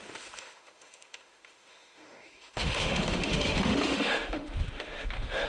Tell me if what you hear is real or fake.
fake